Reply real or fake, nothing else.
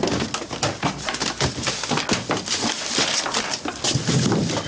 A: real